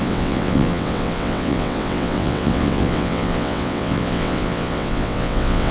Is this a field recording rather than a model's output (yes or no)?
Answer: no